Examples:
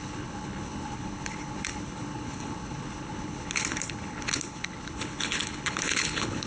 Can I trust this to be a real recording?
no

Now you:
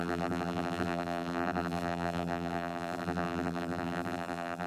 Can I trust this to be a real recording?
no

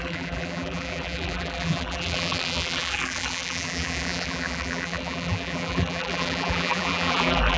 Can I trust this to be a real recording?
no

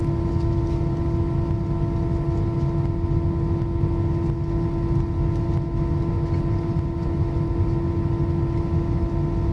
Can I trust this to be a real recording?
yes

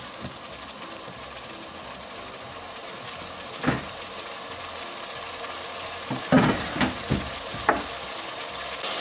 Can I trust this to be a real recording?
yes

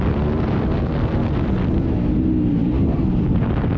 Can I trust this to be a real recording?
yes